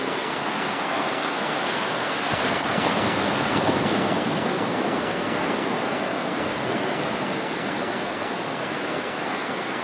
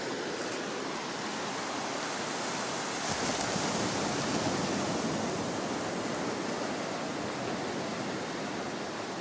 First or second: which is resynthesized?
first